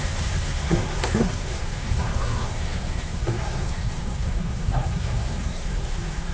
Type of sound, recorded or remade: remade